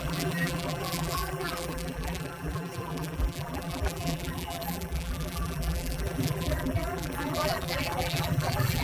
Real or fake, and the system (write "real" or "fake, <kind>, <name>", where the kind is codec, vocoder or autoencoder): fake, vocoder, BigVGAN v2